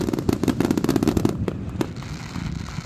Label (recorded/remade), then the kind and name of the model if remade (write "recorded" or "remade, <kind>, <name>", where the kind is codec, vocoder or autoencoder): recorded